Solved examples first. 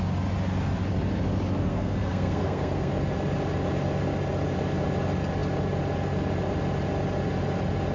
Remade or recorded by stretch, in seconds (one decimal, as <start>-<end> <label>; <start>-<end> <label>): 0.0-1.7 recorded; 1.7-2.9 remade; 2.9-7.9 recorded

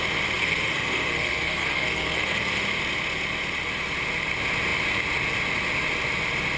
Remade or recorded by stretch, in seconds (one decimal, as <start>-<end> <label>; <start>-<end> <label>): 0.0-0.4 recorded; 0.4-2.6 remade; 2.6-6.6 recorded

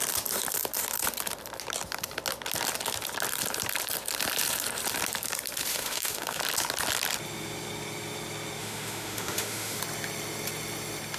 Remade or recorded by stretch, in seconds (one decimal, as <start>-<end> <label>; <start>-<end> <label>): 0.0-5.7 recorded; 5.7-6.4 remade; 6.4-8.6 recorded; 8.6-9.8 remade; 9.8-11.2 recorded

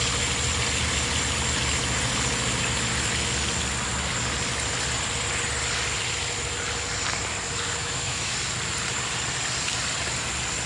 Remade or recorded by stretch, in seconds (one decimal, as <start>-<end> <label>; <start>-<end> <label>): 0.0-7.8 recorded; 7.8-8.3 remade; 8.3-10.7 recorded

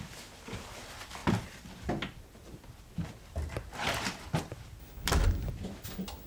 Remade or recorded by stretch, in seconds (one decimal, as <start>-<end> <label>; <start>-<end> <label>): 0.0-6.3 recorded